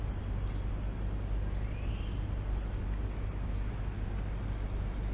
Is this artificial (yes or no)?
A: no